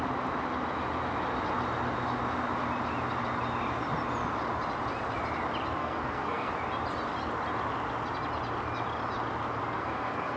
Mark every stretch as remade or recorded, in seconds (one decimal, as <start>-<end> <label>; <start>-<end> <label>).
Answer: 0.0-5.8 recorded; 5.8-6.5 remade; 6.5-9.6 recorded; 9.6-10.4 remade